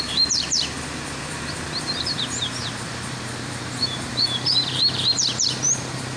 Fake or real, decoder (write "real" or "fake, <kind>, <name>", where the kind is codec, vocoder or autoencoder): fake, vocoder, BigVGAN v2